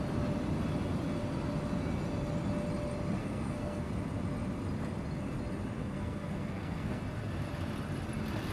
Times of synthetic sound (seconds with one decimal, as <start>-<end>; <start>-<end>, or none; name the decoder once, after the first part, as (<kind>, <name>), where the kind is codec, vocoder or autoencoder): 3.2-3.9 (codec, SNAC); 5.8-7.0